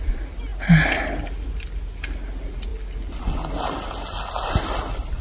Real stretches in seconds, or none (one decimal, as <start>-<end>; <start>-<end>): 0.0-5.2